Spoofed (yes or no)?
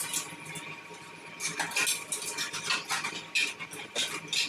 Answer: no